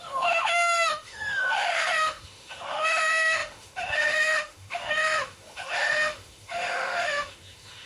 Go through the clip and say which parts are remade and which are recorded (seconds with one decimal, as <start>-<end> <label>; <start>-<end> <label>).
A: 0.0-7.9 remade